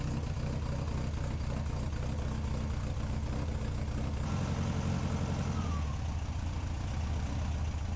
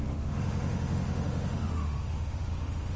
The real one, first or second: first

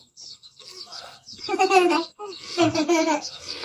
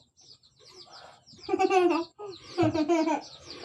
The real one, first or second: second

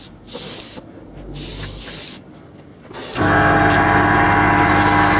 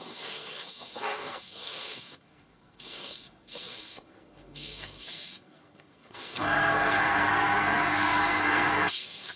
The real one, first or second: first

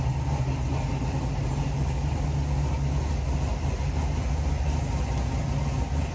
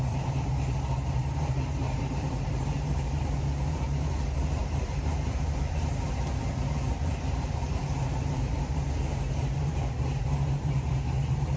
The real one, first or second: first